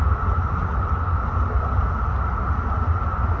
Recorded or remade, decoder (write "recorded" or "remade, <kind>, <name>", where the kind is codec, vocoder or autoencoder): recorded